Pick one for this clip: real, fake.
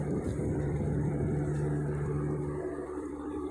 fake